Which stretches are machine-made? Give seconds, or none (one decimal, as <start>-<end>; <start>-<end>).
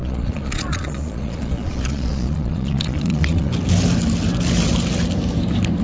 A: 0.0-3.5